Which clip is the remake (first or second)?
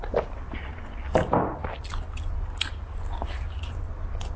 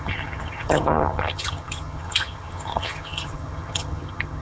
second